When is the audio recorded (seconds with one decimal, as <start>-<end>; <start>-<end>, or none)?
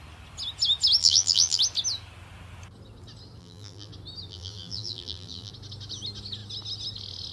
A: 0.0-1.0; 1.6-3.4; 3.9-4.3; 5.5-7.3